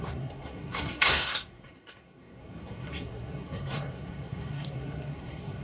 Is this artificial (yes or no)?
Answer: yes